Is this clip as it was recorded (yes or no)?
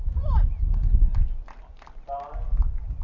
yes